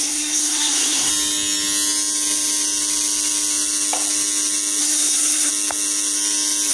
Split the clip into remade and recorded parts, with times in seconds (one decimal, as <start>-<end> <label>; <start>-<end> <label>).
0.0-1.1 remade; 1.1-4.8 recorded; 4.8-5.5 remade; 5.5-6.7 recorded